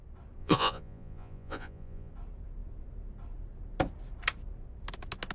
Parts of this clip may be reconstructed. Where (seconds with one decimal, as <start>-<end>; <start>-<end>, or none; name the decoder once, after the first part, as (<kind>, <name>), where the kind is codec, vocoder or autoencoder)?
0.4-2.1 (vocoder, Vocos)

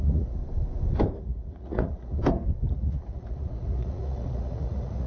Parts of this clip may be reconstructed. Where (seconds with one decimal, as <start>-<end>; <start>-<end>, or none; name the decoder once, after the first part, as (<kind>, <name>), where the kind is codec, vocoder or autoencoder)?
0.0-0.4 (vocoder, Vocos); 1.2-2.2; 2.7-5.1